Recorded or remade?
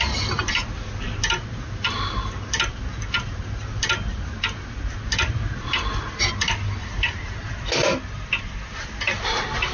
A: recorded